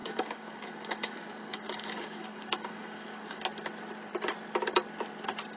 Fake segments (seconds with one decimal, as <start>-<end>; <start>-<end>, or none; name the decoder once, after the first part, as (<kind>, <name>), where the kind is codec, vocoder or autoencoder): 0.0-3.4 (codec, DAC)